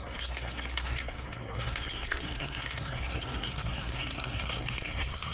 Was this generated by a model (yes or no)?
yes